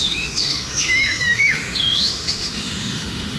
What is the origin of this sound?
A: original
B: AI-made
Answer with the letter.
B